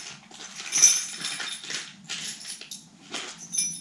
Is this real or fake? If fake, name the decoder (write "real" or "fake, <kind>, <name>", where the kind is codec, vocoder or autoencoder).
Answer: real